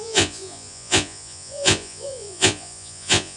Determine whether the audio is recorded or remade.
remade